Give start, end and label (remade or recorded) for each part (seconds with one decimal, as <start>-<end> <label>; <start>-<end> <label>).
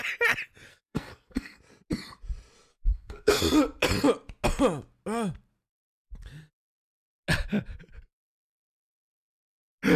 0.0-0.7 recorded; 0.7-1.6 remade; 1.6-2.7 recorded; 2.7-3.4 remade; 3.4-10.0 recorded